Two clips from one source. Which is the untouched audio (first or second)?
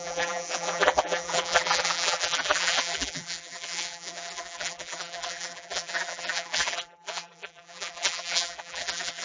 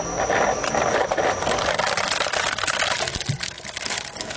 second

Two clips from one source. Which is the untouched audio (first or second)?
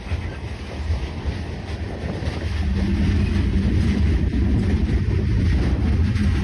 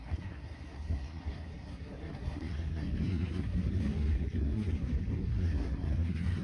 first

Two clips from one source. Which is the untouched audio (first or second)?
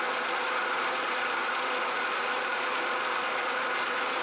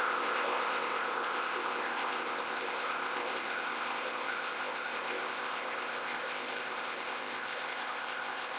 first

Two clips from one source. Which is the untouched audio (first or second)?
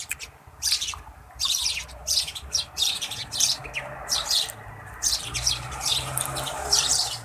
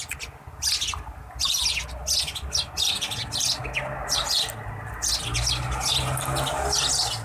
second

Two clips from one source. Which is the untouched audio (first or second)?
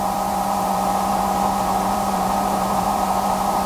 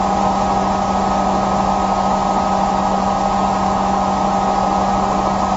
second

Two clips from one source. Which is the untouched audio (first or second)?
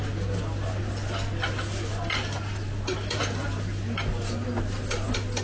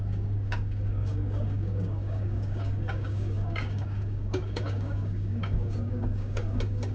first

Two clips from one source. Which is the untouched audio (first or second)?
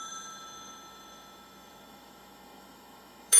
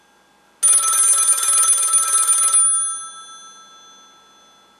second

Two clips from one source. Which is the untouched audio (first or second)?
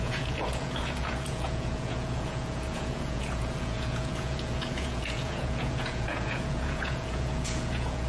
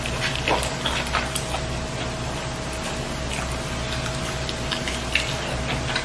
second